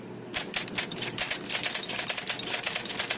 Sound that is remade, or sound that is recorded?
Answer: recorded